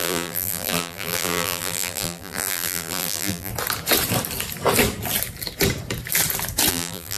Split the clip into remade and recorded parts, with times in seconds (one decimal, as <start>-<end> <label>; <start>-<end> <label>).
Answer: 0.0-3.5 remade; 3.5-6.7 recorded; 6.7-7.2 remade